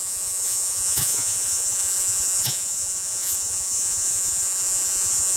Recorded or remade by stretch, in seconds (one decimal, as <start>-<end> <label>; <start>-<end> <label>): 0.0-5.4 remade